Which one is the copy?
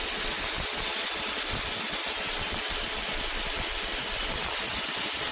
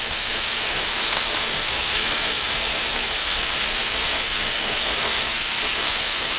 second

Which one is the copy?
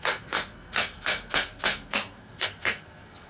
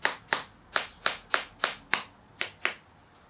first